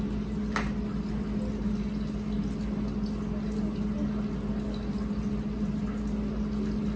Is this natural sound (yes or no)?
yes